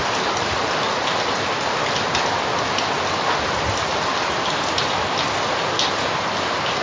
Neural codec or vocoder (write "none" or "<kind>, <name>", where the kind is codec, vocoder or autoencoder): none